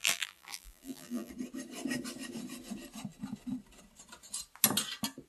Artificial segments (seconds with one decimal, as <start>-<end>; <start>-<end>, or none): 0.0-1.3

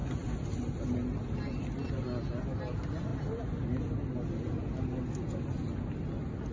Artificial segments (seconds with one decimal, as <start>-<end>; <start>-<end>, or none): none